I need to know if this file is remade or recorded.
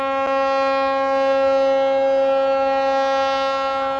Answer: recorded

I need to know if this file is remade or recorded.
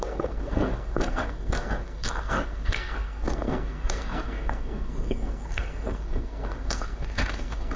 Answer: remade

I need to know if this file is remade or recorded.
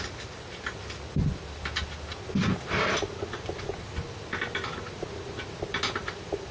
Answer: recorded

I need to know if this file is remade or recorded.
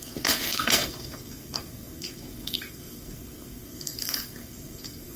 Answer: remade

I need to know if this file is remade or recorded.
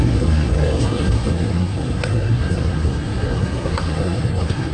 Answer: remade